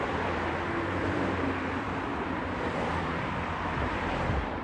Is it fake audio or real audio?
fake